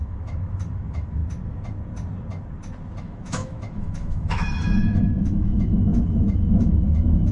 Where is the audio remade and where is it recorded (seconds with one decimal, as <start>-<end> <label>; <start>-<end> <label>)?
0.0-1.2 remade; 1.2-3.0 recorded; 3.0-7.3 remade